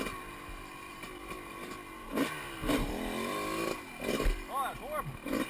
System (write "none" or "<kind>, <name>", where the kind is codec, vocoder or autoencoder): none